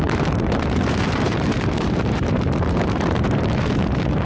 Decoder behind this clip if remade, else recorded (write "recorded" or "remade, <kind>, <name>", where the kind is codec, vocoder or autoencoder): remade, vocoder, BigVGAN v2